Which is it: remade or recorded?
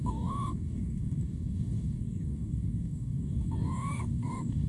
remade